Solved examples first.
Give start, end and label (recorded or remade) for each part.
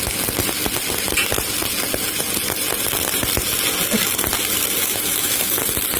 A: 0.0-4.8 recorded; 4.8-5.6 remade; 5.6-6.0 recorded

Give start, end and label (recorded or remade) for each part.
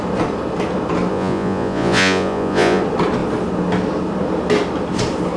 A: 0.0-1.1 recorded; 1.1-2.8 remade; 2.8-5.4 recorded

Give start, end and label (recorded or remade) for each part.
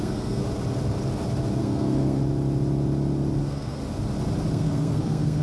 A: 0.0-0.4 remade; 0.4-1.6 recorded; 1.6-2.2 remade; 2.2-3.4 recorded; 3.4-3.8 remade; 3.8-4.5 recorded; 4.5-5.4 remade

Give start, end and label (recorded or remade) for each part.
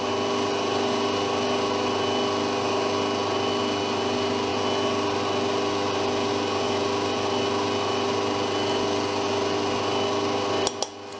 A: 0.0-11.2 recorded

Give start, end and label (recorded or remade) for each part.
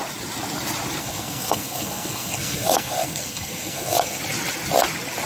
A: 0.0-1.0 recorded; 1.0-4.2 remade; 4.2-5.3 recorded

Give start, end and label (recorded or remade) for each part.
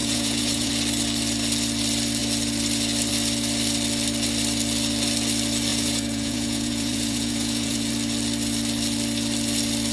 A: 0.0-0.7 remade; 0.7-5.7 recorded; 5.7-7.9 remade; 7.9-9.9 recorded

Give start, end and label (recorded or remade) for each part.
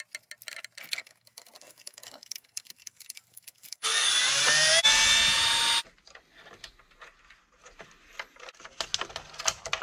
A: 0.0-0.8 recorded; 0.8-4.1 remade; 4.1-9.8 recorded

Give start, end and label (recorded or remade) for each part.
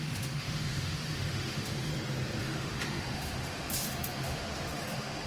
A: 0.0-1.9 remade; 1.9-2.4 recorded; 2.4-5.3 remade